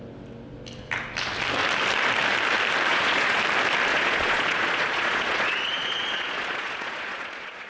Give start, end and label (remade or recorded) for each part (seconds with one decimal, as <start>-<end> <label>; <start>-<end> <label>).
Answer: 0.0-2.9 recorded; 2.9-3.4 remade; 3.4-3.9 recorded; 3.9-7.7 remade

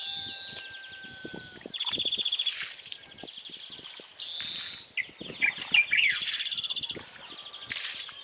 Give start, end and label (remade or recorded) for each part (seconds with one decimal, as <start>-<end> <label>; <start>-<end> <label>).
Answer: 0.0-8.2 recorded

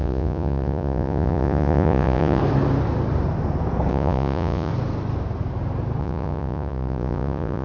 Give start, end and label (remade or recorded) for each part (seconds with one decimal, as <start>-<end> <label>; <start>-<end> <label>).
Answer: 0.0-2.4 remade; 2.4-3.9 recorded; 3.9-4.7 remade; 4.7-6.0 recorded; 6.0-7.6 remade

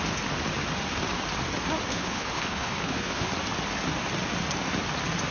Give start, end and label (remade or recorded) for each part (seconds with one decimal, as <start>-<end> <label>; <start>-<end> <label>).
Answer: 0.0-1.9 recorded; 1.9-3.3 remade; 3.3-5.3 recorded

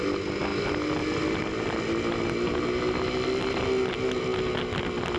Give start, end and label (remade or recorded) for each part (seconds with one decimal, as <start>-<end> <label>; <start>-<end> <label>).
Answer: 0.0-5.2 recorded

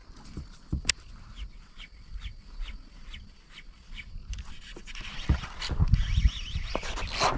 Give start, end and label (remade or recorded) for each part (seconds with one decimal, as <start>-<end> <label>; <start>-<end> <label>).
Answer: 0.0-7.4 recorded